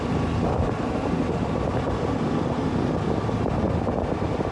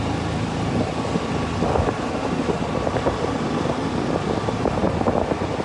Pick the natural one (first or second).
first